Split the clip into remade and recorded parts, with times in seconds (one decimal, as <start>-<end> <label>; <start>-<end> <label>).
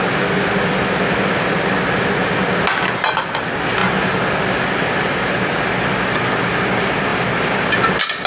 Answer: 0.0-8.3 recorded